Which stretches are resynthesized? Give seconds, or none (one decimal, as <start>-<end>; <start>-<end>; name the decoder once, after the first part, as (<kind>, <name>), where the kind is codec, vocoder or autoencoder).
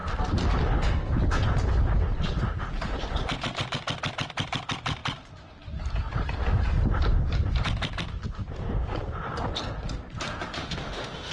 10.6-11.3 (autoencoder, DAC-VAE)